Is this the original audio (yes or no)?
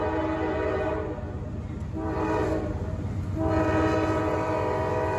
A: yes